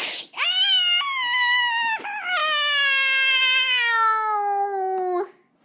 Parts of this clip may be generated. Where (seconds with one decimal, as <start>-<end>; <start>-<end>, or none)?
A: none